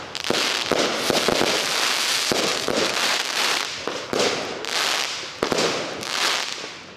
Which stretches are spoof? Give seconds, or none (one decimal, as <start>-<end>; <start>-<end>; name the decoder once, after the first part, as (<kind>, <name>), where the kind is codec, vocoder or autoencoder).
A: 2.5-4.3 (vocoder, BigVGAN v2)